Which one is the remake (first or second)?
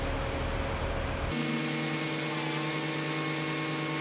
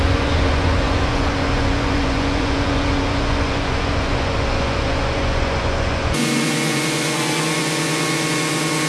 second